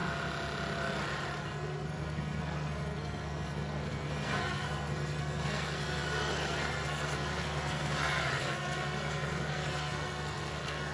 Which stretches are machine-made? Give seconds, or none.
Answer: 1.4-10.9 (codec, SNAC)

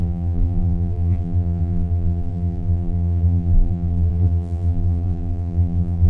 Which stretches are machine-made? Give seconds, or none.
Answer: 0.0-6.1 (vocoder, BigVGAN v2)

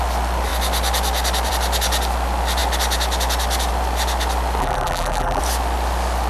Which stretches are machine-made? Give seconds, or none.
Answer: 4.6-5.4 (vocoder, BigVGAN v2)